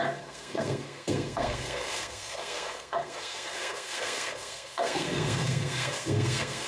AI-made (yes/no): yes